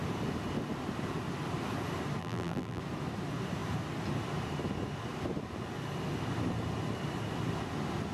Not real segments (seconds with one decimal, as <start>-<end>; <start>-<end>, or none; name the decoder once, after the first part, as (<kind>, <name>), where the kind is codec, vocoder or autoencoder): 2.2-2.8 (vocoder, BigVGAN v2)